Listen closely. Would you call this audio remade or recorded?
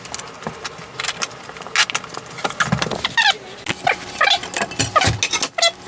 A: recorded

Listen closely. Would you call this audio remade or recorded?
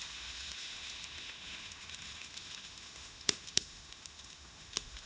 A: remade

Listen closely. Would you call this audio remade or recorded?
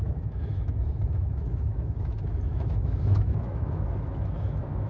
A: remade